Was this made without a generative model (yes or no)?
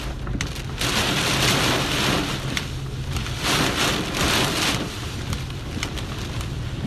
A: yes